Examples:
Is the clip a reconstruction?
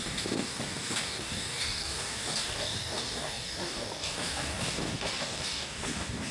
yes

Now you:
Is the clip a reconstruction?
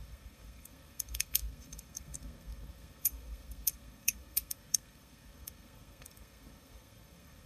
yes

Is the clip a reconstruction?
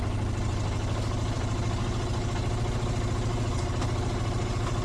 no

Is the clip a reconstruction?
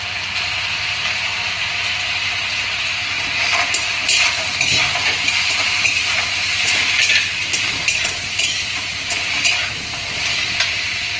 no